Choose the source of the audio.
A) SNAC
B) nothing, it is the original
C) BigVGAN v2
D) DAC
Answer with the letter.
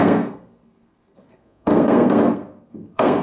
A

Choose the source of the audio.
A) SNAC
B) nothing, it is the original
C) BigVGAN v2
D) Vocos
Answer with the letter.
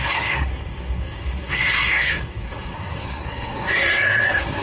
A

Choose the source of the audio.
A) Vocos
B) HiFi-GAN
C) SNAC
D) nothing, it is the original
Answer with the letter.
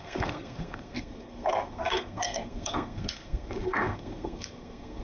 C